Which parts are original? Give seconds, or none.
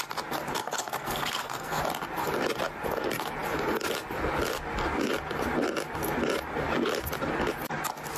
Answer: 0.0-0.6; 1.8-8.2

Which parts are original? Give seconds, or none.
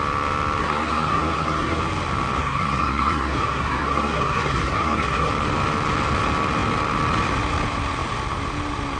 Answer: 0.0-0.6; 1.8-2.4; 5.3-9.0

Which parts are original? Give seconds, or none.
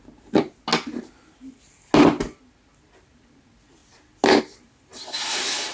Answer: 0.0-5.7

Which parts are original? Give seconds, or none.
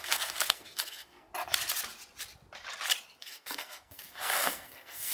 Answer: 1.3-3.2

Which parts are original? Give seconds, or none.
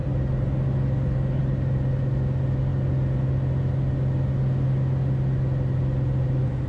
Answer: 0.0-6.7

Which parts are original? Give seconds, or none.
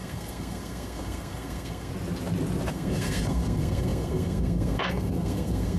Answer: 1.9-2.7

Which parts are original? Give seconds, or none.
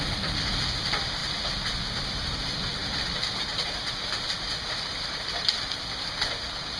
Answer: 0.0-6.8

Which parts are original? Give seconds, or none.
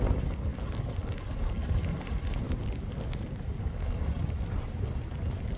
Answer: 0.0-5.6